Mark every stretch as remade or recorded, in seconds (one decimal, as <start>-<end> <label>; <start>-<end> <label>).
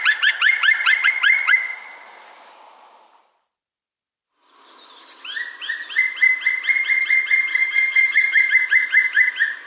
0.0-7.5 recorded; 7.5-8.5 remade; 8.5-9.7 recorded